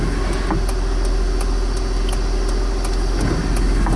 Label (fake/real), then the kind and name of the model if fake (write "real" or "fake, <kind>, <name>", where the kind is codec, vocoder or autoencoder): real